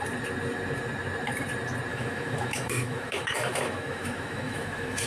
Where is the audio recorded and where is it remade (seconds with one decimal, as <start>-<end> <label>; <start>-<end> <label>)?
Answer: 0.0-1.9 recorded; 1.9-5.1 remade